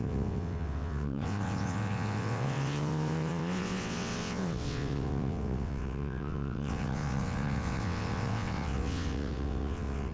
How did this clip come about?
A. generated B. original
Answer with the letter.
A